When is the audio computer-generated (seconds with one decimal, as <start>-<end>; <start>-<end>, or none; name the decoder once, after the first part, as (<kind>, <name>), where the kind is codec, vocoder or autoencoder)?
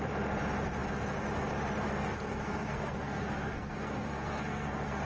1.9-5.0 (codec, SNAC)